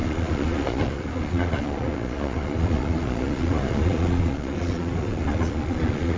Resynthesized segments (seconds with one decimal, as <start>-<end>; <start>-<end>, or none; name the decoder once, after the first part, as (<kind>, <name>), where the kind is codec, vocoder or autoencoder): 0.0-6.2 (vocoder, Vocos)